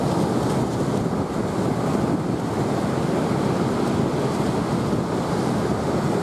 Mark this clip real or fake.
real